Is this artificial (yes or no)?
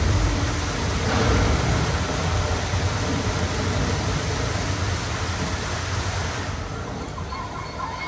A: no